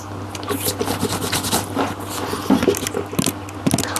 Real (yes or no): yes